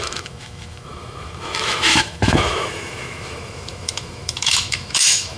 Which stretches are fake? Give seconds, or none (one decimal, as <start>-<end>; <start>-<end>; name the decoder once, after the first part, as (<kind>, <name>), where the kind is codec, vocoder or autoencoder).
0.0-5.4 (autoencoder, DAC-VAE)